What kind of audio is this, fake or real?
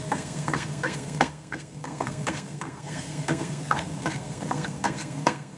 fake